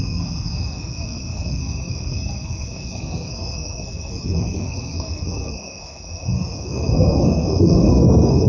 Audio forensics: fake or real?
fake